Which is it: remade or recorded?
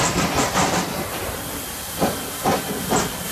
remade